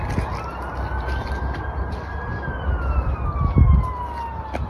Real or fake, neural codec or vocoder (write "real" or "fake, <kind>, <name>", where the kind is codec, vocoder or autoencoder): real